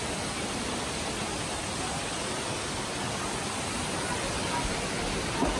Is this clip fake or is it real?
real